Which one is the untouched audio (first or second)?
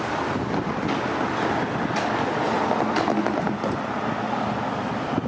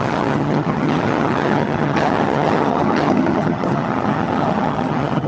first